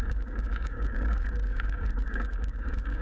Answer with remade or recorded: remade